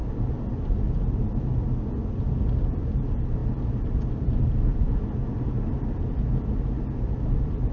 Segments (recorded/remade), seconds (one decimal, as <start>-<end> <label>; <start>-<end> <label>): 0.0-7.7 recorded